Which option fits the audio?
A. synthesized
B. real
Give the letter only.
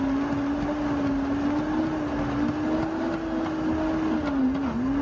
B